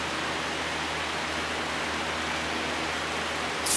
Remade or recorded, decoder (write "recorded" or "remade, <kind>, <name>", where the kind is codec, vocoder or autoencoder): recorded